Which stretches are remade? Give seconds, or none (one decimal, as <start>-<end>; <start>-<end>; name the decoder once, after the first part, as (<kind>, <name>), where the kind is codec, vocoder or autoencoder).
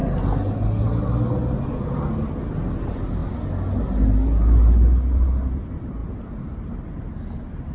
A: none